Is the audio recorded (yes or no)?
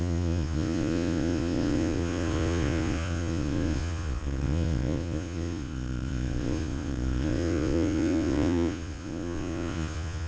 no